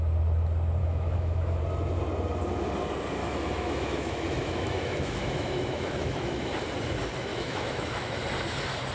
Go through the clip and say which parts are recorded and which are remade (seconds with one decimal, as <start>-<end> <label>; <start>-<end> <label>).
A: 0.0-0.8 recorded; 0.8-1.6 remade; 1.6-3.2 recorded; 3.2-6.5 remade; 6.5-7.3 recorded; 7.3-8.2 remade; 8.2-8.9 recorded